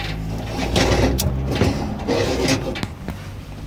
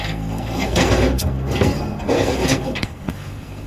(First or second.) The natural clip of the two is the first